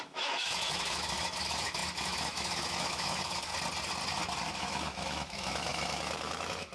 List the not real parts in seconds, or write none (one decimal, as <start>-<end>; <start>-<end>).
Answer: 0.0-3.5; 4.5-6.7